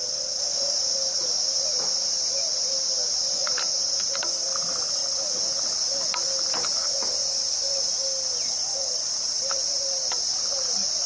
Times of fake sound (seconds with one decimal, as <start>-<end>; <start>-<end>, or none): 8.7-11.1